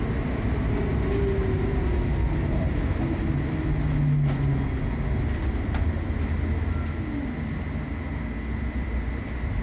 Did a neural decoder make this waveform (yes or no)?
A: no